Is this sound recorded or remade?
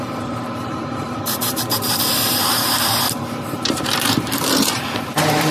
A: remade